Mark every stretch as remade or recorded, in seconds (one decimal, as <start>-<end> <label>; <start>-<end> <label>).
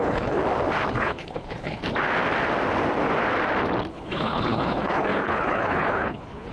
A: 0.0-0.4 remade; 0.4-0.9 recorded; 0.9-1.8 remade; 1.8-3.9 recorded; 3.9-6.5 remade